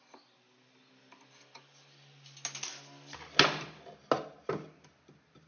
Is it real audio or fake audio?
real